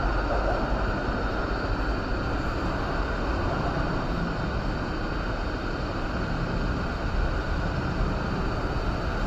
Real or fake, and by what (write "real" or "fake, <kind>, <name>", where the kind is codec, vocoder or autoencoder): real